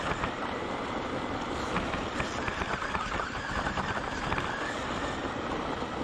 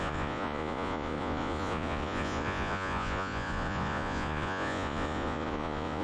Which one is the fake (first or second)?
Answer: second